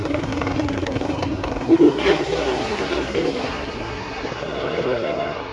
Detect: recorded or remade remade